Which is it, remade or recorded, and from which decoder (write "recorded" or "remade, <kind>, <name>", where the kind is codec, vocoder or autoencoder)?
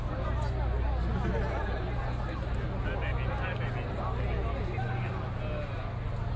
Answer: recorded